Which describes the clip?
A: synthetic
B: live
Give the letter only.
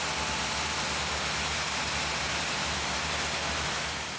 B